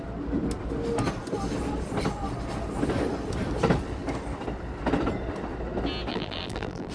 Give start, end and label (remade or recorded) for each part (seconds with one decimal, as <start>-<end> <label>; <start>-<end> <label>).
0.0-6.1 recorded; 6.1-6.9 remade